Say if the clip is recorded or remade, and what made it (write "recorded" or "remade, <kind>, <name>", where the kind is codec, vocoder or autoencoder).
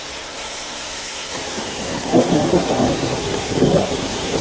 remade, codec, SNAC